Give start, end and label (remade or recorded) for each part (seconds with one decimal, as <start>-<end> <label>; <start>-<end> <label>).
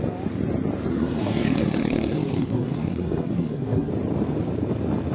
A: 0.0-0.9 recorded; 0.9-3.9 remade; 3.9-5.1 recorded